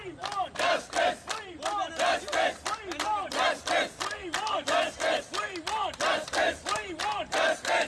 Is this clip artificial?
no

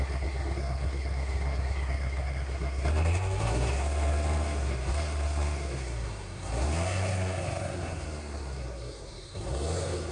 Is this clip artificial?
yes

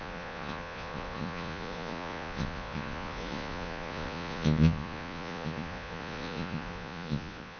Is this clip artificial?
yes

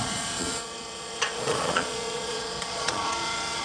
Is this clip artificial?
yes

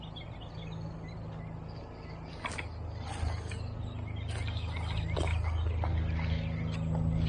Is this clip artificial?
no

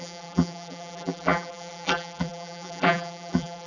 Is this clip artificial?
yes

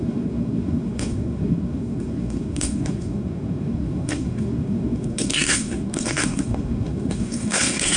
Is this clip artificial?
yes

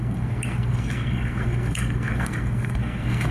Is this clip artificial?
yes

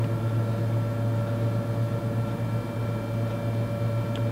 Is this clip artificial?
no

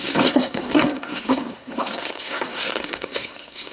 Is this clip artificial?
yes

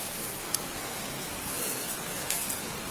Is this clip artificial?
yes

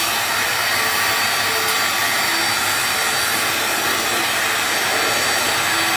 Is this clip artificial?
no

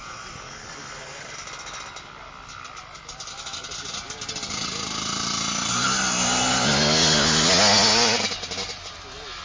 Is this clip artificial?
no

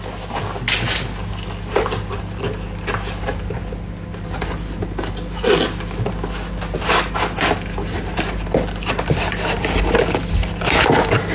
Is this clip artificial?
no